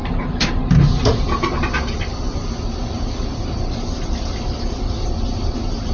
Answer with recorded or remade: remade